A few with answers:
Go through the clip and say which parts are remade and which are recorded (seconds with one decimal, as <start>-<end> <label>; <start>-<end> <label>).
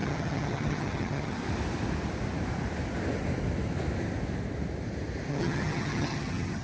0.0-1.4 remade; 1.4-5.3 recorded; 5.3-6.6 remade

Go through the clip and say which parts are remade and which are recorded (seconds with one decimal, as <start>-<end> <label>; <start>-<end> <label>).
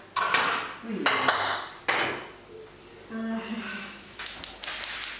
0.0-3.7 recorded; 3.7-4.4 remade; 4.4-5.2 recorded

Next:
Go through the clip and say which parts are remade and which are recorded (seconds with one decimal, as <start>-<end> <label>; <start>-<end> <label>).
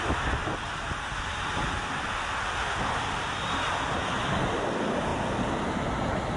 0.0-6.4 recorded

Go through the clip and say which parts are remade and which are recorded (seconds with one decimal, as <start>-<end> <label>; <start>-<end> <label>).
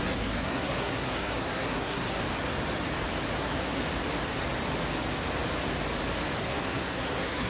0.0-2.2 remade; 2.2-3.4 recorded; 3.4-3.8 remade; 3.8-6.4 recorded; 6.4-7.5 remade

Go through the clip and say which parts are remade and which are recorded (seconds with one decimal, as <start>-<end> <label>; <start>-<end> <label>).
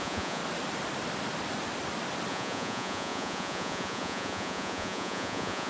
0.0-0.4 remade; 0.4-2.3 recorded; 2.3-5.7 remade